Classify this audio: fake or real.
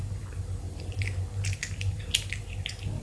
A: real